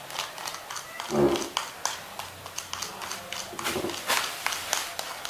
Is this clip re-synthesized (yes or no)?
no